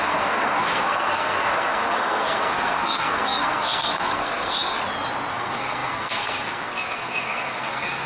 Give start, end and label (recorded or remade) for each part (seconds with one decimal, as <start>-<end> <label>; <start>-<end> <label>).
0.0-4.8 remade; 4.8-5.3 recorded; 5.3-8.1 remade